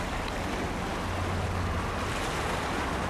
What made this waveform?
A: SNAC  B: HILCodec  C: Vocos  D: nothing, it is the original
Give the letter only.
D